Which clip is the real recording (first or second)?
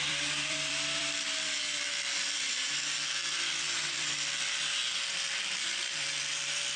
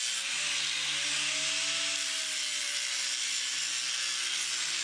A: second